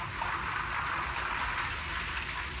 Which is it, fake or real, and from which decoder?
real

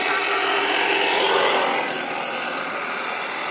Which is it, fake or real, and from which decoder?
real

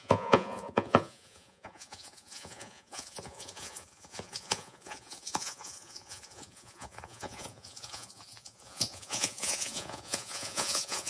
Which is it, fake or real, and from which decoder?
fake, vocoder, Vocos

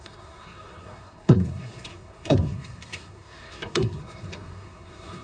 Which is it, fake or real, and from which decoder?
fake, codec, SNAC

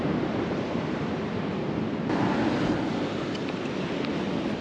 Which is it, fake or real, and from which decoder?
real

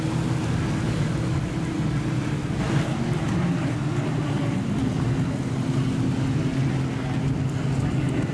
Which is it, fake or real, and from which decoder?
real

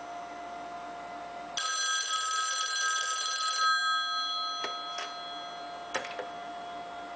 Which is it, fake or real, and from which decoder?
real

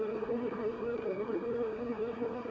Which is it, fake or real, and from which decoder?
fake, codec, SNAC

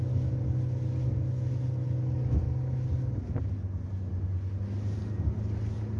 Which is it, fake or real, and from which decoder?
real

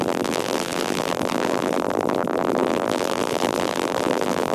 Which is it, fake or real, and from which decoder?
fake, vocoder, BigVGAN v2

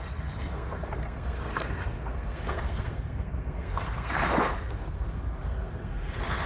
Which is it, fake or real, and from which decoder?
fake, codec, SNAC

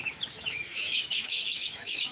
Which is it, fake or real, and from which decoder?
fake, autoencoder, DAC-VAE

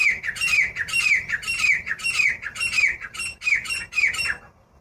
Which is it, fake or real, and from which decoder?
real